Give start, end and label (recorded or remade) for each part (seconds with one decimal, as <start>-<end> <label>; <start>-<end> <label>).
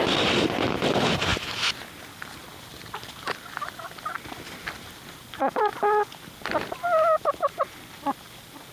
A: 0.0-8.7 recorded